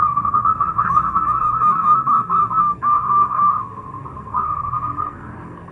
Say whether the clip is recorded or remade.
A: remade